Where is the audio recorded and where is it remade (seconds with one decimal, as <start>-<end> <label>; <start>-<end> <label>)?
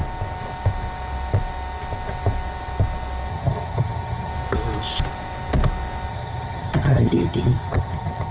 0.0-3.3 recorded; 3.3-4.3 remade; 4.3-6.1 recorded; 6.1-8.3 remade